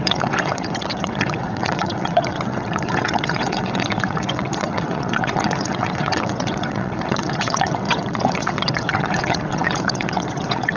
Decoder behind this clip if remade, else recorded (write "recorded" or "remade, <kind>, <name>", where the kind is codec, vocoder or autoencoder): remade, vocoder, WaveNeXt